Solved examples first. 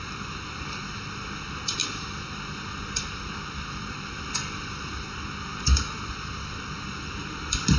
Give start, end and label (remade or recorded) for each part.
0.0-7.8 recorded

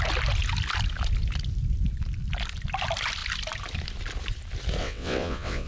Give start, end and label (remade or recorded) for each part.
0.0-4.8 recorded; 4.8-5.7 remade

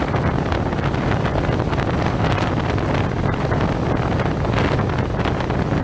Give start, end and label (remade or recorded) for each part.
0.0-5.8 recorded

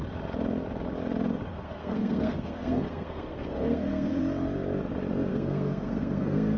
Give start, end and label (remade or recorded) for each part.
0.0-1.5 recorded; 1.5-4.2 remade; 4.2-5.3 recorded; 5.3-6.6 remade